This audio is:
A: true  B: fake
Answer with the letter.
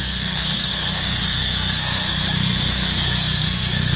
B